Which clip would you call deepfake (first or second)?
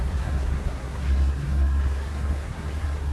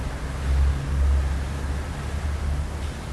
first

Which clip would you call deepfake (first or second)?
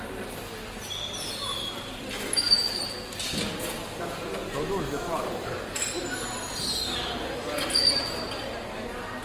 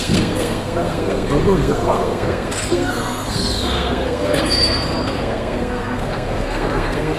second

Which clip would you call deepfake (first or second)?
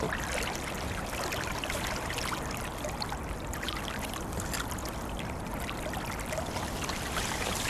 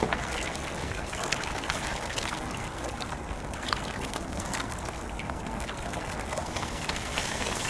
second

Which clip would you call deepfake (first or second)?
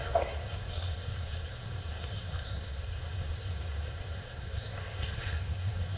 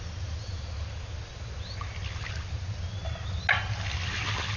first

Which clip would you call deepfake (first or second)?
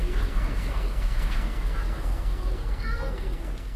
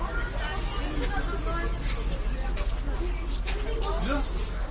first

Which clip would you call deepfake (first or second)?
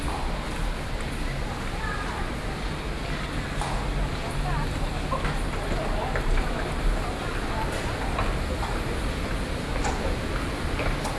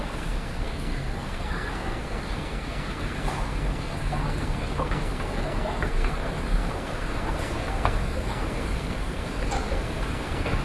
second